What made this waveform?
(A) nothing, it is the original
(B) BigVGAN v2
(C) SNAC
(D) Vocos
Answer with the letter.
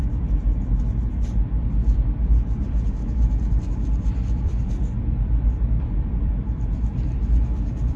B